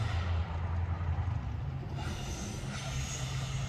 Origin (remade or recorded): recorded